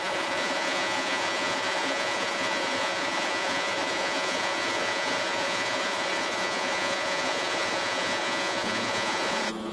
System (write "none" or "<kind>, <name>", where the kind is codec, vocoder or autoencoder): vocoder, Vocos